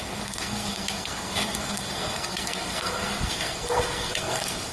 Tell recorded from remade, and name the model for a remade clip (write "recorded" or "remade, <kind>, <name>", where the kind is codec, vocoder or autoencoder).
remade, codec, SNAC